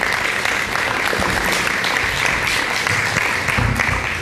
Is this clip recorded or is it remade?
recorded